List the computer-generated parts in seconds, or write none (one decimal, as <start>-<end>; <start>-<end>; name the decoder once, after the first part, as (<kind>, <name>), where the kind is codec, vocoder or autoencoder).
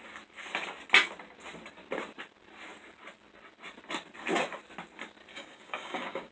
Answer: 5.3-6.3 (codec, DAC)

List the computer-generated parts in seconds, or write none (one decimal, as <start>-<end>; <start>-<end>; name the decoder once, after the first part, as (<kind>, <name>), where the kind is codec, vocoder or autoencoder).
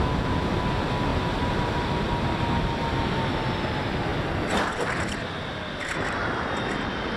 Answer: 1.1-2.5 (vocoder, BigVGAN v2)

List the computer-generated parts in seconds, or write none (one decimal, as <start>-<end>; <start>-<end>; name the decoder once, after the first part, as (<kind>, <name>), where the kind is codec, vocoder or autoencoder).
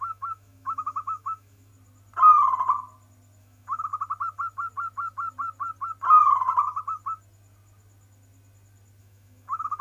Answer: 0.0-1.7 (autoencoder, DAC-VAE); 3.4-3.9; 9.0-9.8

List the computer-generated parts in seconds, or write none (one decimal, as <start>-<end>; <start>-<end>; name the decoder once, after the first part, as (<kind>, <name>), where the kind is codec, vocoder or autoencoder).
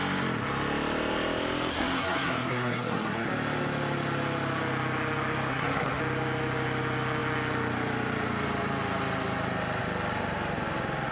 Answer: 1.7-3.3 (codec, SNAC); 5.5-6.0